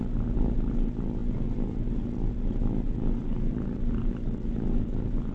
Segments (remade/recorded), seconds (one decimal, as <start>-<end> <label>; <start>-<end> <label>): 0.0-5.3 recorded